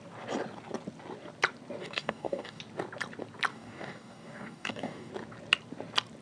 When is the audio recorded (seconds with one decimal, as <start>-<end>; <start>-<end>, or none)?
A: 0.0-1.8; 2.6-3.5; 5.1-6.2